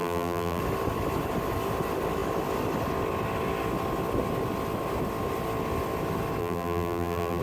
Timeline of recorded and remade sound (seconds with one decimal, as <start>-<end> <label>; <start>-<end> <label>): 0.0-0.6 remade; 0.6-6.4 recorded; 6.4-7.4 remade